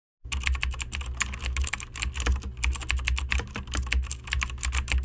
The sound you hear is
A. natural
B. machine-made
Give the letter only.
A